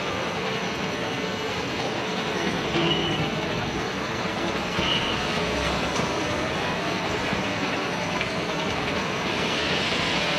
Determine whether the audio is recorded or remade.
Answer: remade